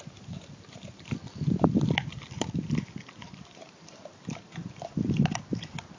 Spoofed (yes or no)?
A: yes